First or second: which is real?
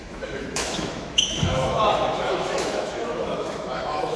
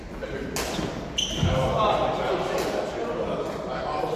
second